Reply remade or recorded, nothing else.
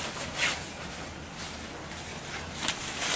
recorded